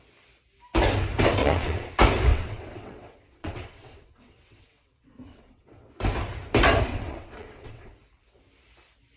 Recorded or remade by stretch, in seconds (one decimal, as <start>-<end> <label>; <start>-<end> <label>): 0.0-1.4 recorded; 1.4-1.9 remade; 1.9-2.3 recorded; 2.3-5.9 remade; 5.9-6.9 recorded; 6.9-7.9 remade; 7.9-9.2 recorded